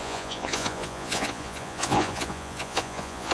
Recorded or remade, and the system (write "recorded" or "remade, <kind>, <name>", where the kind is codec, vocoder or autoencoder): remade, vocoder, Vocos